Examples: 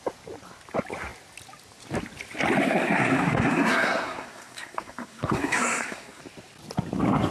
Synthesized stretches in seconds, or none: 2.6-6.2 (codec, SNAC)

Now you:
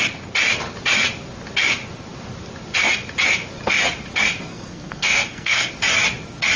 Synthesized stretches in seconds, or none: 4.5-5.7 (codec, SNAC)

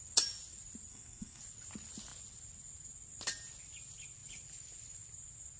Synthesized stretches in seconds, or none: 0.9-1.4 (codec, SNAC)

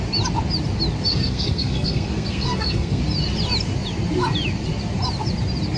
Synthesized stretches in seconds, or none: 1.1-3.0 (codec, SNAC)

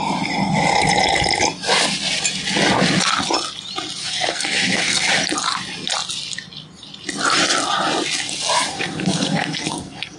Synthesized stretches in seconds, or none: 4.0-5.1 (codec, SNAC); 8.7-10.2

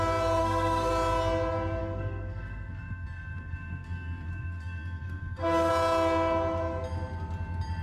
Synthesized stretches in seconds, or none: 0.4-0.9 (codec, SNAC); 1.8-5.7